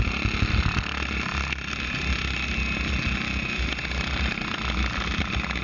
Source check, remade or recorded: recorded